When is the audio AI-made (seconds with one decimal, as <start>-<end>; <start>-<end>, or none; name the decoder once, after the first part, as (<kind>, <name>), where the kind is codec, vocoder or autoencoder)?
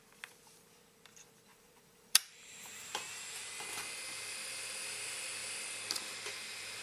1.5-3.2 (vocoder, BigVGAN v2)